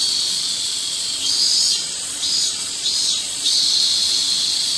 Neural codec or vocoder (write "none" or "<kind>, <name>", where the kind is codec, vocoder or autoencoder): vocoder, Vocos